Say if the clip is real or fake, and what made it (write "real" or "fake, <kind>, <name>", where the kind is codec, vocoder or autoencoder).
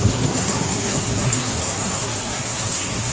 fake, codec, SNAC